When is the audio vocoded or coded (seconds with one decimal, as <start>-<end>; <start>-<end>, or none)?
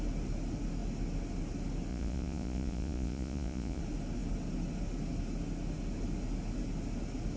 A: 1.9-3.8